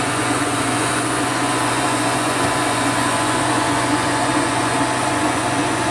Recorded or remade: remade